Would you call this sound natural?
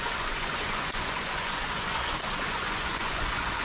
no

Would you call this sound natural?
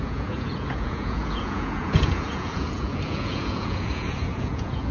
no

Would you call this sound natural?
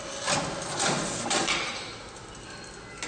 yes